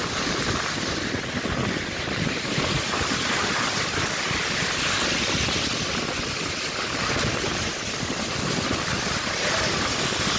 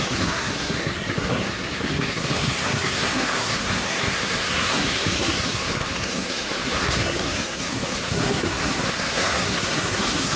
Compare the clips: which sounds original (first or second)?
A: first